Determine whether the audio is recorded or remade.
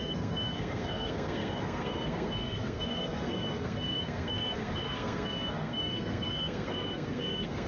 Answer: remade